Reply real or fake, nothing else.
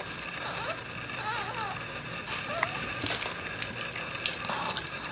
real